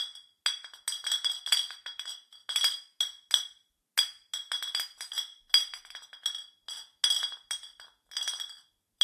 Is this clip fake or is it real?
real